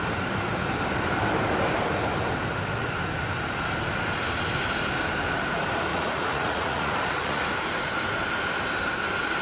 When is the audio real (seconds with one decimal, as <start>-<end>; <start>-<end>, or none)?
0.0-5.9; 7.5-9.4